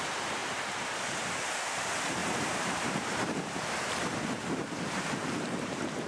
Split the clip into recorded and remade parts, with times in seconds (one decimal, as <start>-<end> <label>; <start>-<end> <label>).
0.0-2.2 recorded; 2.2-6.1 remade